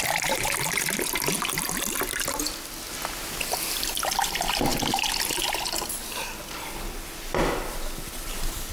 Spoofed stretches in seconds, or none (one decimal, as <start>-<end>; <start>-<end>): none